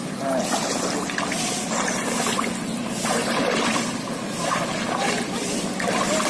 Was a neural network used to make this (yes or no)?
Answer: no